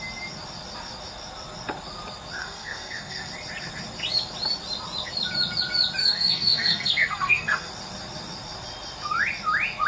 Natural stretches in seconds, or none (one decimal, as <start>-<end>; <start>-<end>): 0.0-2.4; 3.3-6.0; 7.7-9.9